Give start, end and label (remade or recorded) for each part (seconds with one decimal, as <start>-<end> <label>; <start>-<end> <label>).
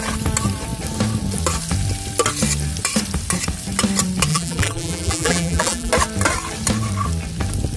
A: 0.0-4.3 recorded; 4.3-5.9 remade; 5.9-7.8 recorded